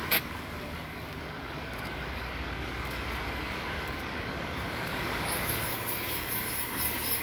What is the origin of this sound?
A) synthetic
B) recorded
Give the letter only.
A